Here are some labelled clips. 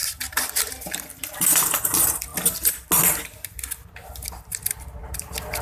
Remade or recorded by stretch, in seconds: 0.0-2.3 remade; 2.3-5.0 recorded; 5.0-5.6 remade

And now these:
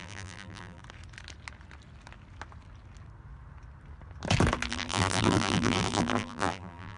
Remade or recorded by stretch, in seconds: 0.0-0.8 remade; 0.8-4.7 recorded; 4.7-7.0 remade

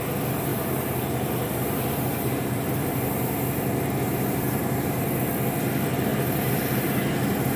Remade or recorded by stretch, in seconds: 0.0-0.5 recorded; 0.5-5.1 remade; 5.1-6.1 recorded; 6.1-7.1 remade; 7.1-7.6 recorded

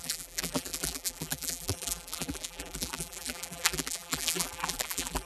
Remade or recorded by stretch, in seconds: 0.0-5.3 remade